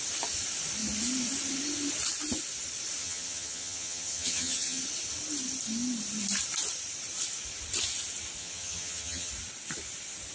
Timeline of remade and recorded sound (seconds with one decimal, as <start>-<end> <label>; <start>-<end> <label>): 0.0-3.0 recorded; 3.0-4.8 remade; 4.8-8.4 recorded; 8.4-9.3 remade; 9.3-10.3 recorded